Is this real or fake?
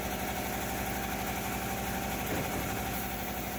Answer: real